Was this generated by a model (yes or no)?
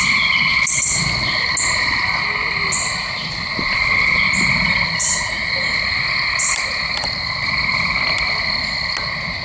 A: no